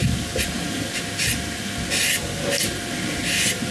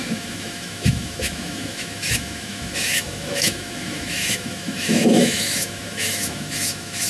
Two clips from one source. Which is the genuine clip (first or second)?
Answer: first